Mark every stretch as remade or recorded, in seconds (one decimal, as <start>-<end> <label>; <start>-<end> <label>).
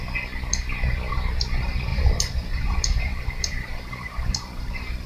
0.0-1.9 recorded; 1.9-5.1 remade